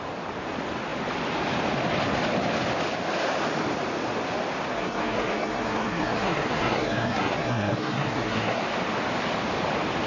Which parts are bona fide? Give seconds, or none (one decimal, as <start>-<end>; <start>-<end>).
0.0-4.7; 8.6-10.1